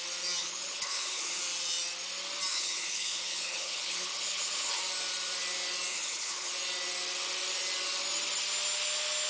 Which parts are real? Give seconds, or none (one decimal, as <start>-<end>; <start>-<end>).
0.0-0.4; 1.4-2.5; 4.8-5.9; 6.5-9.3

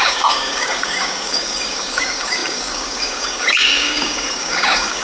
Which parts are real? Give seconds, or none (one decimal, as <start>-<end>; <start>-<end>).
none

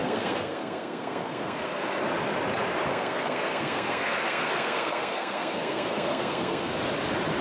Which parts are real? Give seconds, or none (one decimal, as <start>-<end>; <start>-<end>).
2.0-2.9; 6.7-7.4

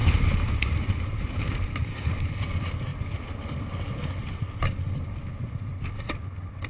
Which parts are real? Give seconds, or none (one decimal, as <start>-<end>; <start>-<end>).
2.3-6.7

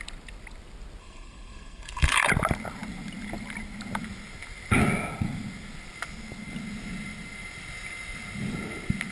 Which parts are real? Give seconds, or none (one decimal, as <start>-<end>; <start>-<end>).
0.0-1.0; 2.3-9.1

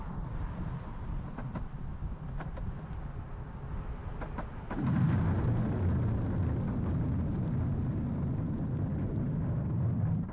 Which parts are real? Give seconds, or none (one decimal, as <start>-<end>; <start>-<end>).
0.0-10.3

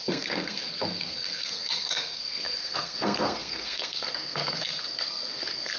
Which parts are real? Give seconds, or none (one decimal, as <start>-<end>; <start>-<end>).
none